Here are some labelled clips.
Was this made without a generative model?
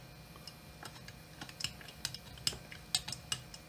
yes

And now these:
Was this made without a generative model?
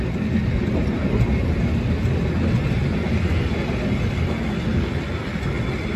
yes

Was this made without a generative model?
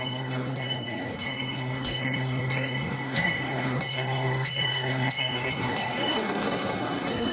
no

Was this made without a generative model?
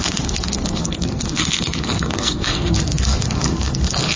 no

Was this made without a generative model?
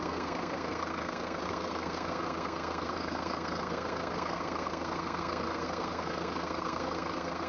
no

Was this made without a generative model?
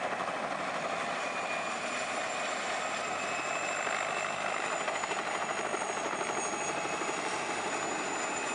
yes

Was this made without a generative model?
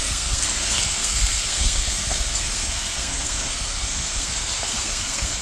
no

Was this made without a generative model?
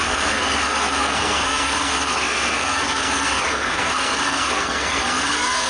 no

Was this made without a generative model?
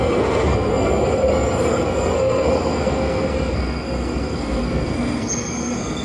no